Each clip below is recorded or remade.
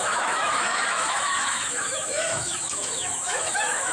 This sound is remade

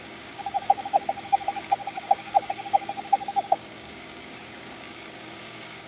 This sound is remade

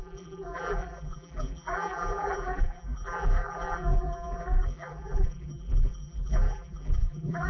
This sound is remade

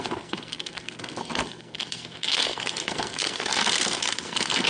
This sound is remade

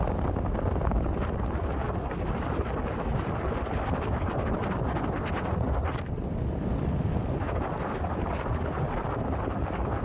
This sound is remade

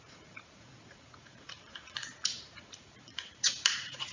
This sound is remade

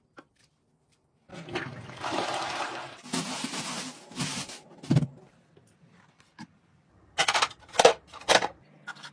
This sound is remade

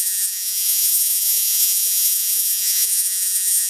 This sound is remade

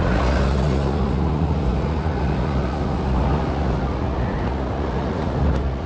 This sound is remade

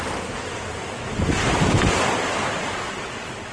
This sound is recorded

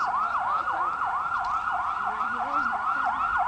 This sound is recorded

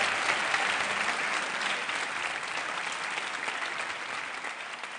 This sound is recorded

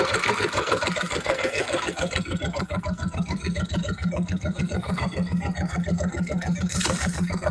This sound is remade